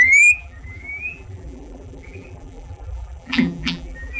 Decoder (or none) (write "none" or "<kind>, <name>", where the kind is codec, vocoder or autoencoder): vocoder, BigVGAN v2